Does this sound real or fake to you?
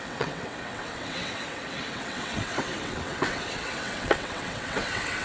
fake